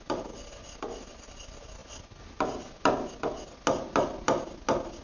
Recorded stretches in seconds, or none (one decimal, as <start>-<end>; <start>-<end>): 0.0-5.0